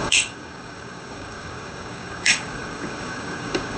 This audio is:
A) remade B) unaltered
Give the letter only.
A